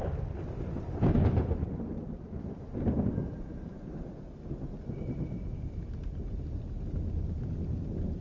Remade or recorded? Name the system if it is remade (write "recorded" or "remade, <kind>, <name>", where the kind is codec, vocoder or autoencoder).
recorded